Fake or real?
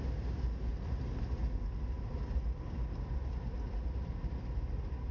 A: real